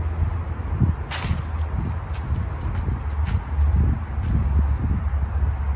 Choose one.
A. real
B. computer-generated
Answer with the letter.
A